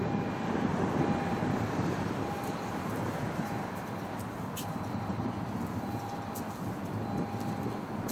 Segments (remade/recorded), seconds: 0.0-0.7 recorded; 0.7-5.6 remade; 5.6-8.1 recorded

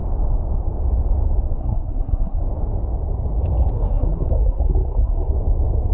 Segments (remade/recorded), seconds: 0.0-1.6 recorded; 1.6-2.4 remade; 2.4-3.6 recorded; 3.6-5.3 remade; 5.3-5.9 recorded